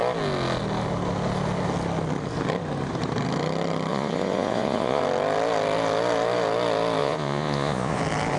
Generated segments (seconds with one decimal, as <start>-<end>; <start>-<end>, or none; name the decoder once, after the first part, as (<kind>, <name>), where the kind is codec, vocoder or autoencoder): 3.9-5.0 (vocoder, Vocos); 7.0-8.0